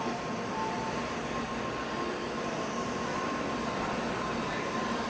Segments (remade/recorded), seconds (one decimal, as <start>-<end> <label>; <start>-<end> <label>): 0.0-1.2 remade; 1.2-2.1 recorded; 2.1-5.1 remade